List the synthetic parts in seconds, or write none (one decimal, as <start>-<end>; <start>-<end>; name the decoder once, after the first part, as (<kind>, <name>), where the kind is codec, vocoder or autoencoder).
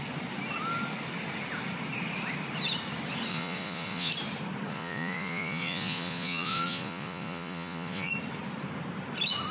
3.3-4.1 (vocoder, Vocos); 4.7-8.1